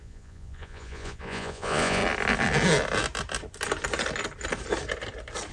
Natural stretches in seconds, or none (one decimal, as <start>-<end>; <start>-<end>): 2.0-5.5

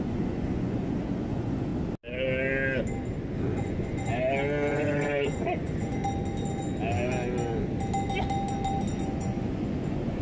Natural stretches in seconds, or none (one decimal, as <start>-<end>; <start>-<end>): 1.7-3.5; 4.1-4.7; 6.0-8.9

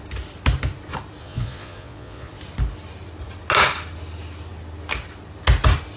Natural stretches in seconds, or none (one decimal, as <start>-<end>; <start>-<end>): 0.0-1.2; 2.3-6.0